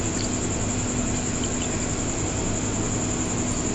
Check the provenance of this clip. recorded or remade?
recorded